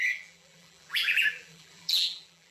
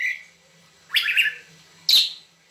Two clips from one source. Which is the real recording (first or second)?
second